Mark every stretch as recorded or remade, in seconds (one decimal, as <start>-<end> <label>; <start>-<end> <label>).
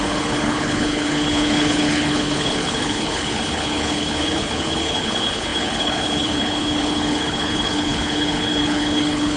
0.0-9.4 remade